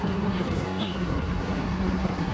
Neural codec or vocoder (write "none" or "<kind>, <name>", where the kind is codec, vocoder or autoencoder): codec, SNAC